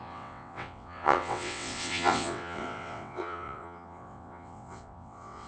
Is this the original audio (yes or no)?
no